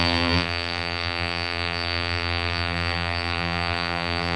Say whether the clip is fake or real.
fake